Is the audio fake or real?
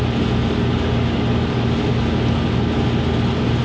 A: real